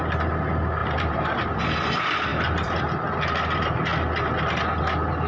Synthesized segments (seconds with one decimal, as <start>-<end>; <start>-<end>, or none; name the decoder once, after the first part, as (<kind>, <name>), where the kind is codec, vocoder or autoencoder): 0.8-1.6 (vocoder, BigVGAN v2); 2.3-2.8